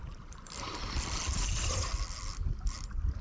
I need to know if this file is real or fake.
fake